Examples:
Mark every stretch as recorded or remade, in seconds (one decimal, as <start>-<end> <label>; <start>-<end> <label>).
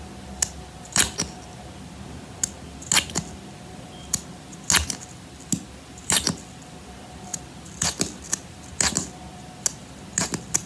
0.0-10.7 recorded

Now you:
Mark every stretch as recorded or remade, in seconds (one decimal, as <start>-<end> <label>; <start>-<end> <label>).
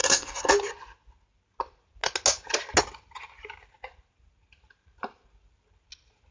0.0-0.5 remade; 0.5-6.3 recorded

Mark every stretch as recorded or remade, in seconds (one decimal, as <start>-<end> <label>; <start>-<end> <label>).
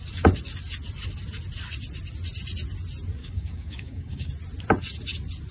0.0-3.2 recorded; 3.2-4.3 remade; 4.3-5.5 recorded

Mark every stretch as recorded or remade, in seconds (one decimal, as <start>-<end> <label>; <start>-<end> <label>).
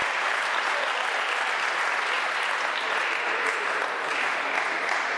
0.0-3.1 remade; 3.1-5.2 recorded